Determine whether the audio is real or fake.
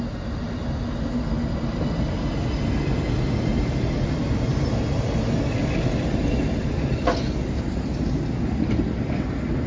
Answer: real